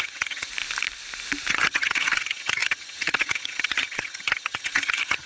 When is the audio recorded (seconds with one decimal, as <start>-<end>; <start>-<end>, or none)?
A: 0.5-1.5